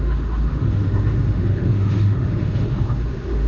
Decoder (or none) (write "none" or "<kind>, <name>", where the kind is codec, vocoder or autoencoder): autoencoder, DAC-VAE